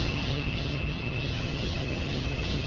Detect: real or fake fake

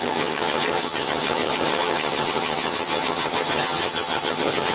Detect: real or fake fake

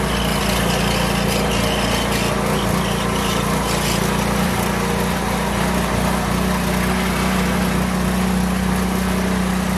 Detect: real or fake real